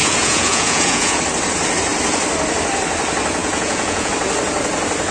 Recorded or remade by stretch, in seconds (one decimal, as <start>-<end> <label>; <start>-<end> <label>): 0.0-1.2 remade; 1.2-3.4 recorded; 3.4-4.1 remade; 4.1-5.1 recorded